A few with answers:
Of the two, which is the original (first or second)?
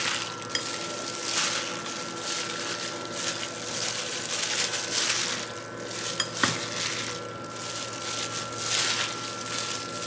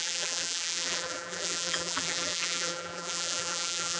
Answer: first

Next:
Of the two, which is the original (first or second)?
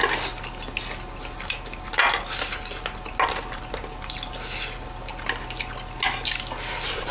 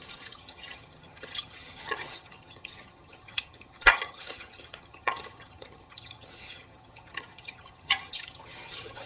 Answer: first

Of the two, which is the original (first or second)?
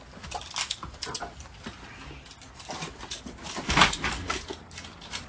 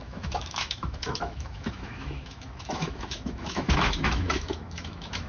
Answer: first